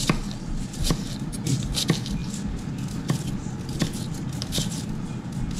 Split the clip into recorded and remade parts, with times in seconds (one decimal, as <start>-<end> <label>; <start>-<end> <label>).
0.0-5.6 recorded